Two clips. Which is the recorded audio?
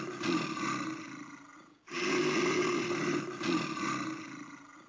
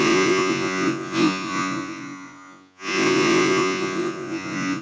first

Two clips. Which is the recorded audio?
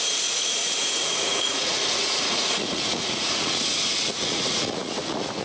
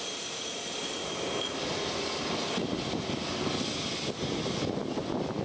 second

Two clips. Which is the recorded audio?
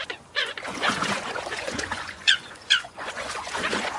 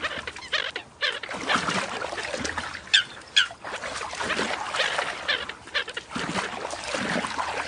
second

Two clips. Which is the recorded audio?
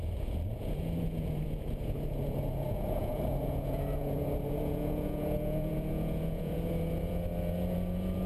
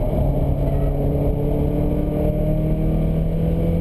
second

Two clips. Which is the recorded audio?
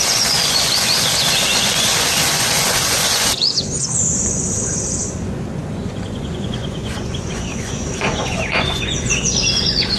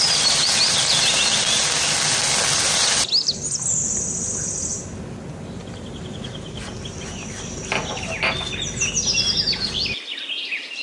second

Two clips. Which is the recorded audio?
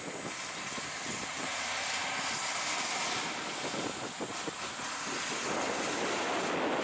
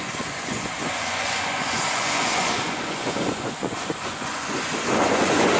first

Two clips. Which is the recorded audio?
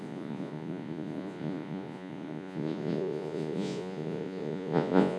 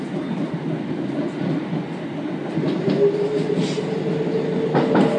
second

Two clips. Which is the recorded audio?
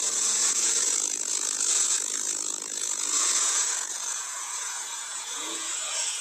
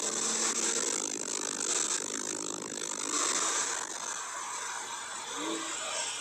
second